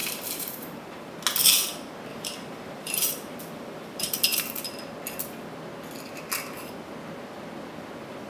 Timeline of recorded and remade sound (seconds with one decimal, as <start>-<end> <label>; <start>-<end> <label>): 0.0-1.1 remade; 1.1-2.1 recorded; 2.1-4.4 remade; 4.4-8.3 recorded